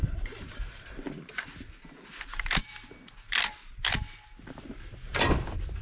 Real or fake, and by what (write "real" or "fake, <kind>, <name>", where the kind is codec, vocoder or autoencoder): real